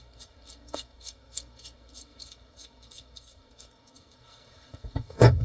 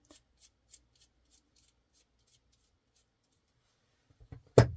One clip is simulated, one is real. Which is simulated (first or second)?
first